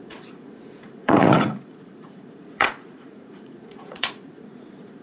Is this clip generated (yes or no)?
yes